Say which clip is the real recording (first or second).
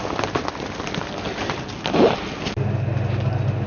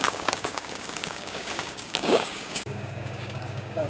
first